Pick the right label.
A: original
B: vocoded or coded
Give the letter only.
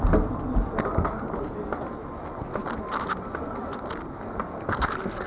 A